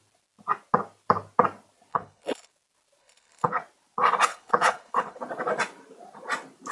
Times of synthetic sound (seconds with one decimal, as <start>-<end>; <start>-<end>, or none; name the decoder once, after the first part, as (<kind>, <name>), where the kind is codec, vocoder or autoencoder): 1.9-2.5 (codec, HILCodec); 3.0-3.6; 4.3-5.2